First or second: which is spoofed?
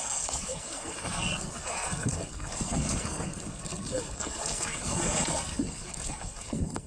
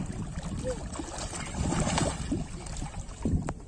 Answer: first